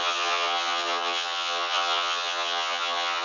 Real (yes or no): no